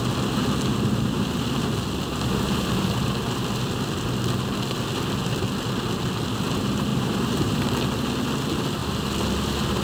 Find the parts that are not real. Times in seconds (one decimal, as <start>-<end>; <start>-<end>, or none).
0.4-3.0; 6.9-7.6